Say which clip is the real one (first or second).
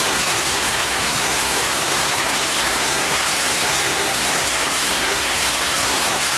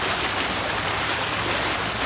second